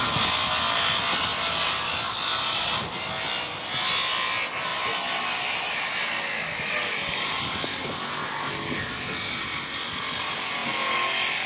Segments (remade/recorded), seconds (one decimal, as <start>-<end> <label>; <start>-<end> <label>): 0.0-4.7 recorded; 4.7-5.8 remade; 5.8-7.7 recorded; 7.7-9.8 remade; 9.8-10.6 recorded; 10.6-11.5 remade